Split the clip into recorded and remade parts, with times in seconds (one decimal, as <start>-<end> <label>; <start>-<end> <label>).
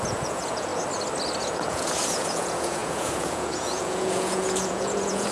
0.0-0.7 remade; 0.7-1.4 recorded; 1.4-5.3 remade